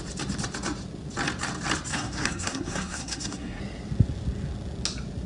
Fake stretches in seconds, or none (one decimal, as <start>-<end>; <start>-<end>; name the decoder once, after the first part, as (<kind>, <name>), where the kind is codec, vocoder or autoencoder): 1.9-3.6 (codec, SNAC)

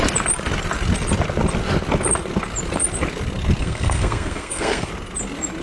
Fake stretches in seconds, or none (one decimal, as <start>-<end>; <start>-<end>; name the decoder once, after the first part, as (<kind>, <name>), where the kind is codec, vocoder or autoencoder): 3.6-4.9 (codec, SNAC)

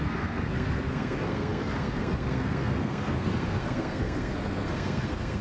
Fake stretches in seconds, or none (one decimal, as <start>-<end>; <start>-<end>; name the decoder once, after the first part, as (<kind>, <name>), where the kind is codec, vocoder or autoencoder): 0.0-5.4 (codec, SNAC)